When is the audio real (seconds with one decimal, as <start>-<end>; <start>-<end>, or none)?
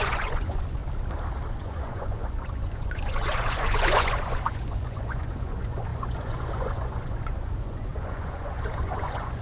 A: 0.8-1.5